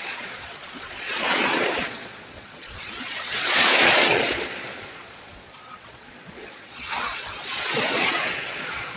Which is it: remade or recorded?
remade